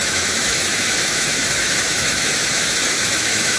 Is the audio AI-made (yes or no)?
yes